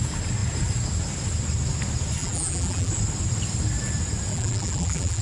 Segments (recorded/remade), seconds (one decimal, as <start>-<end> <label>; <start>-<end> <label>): 0.0-2.2 recorded; 2.2-2.9 remade; 2.9-4.3 recorded; 4.3-5.2 remade